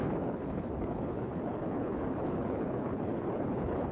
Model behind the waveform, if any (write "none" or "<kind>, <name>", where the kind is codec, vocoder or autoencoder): codec, HILCodec